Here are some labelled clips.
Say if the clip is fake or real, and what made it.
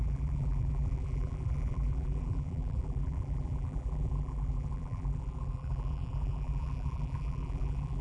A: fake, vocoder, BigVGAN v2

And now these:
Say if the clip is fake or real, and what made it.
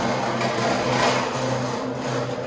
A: real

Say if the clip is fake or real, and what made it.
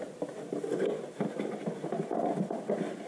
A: real